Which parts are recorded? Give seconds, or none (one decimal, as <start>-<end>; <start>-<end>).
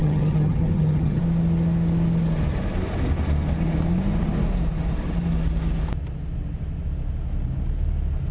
1.2-8.3